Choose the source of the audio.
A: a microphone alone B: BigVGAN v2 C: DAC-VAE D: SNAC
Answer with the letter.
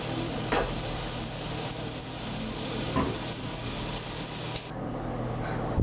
A